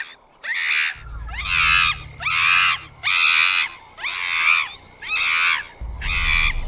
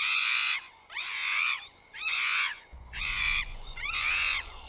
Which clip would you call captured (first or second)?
first